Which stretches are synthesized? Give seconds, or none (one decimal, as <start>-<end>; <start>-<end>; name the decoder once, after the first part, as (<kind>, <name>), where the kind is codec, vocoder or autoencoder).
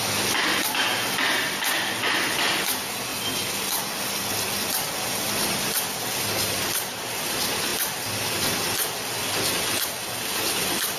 3.1-6.0 (vocoder, BigVGAN v2)